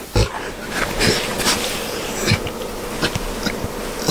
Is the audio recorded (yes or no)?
yes